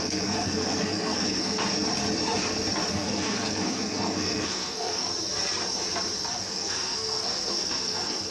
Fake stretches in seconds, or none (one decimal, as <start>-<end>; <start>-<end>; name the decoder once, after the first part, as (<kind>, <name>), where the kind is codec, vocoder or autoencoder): 0.0-1.6 (codec, SNAC); 2.9-5.1; 6.3-8.3